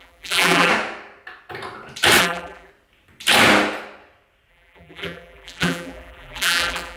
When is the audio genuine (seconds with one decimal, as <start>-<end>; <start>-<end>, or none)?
0.7-2.2; 2.7-4.5